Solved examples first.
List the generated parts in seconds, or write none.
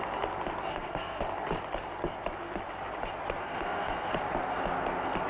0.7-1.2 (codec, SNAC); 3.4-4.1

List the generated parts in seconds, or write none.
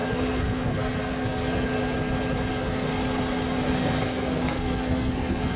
0.0-1.8 (codec, SNAC); 2.5-2.9; 3.7-5.6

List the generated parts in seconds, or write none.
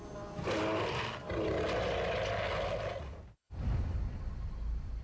none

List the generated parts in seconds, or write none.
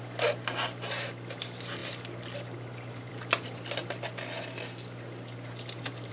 none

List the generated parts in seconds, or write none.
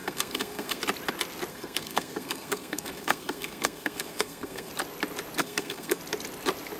0.0-0.8 (codec, SNAC); 1.5-4.7; 5.4-6.0